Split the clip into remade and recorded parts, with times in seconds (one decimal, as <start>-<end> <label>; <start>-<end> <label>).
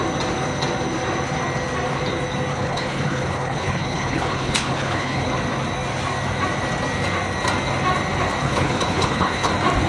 0.0-2.5 recorded; 2.5-5.3 remade; 5.3-8.4 recorded; 8.4-9.5 remade; 9.5-9.9 recorded